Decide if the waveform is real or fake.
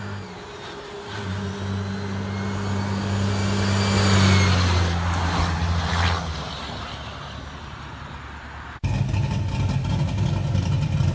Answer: real